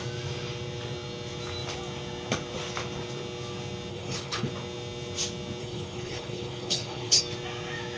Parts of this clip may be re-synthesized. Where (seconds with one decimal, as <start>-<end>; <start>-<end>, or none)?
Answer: 3.9-4.5; 5.6-7.2